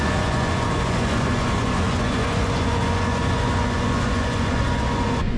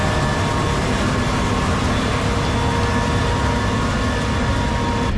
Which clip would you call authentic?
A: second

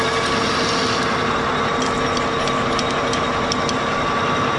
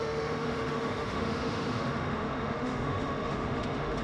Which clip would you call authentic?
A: first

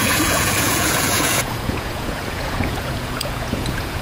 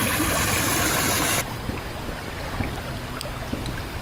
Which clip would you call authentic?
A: second